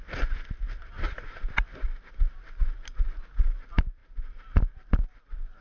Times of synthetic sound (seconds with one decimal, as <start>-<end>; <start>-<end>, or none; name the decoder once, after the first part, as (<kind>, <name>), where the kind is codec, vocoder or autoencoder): none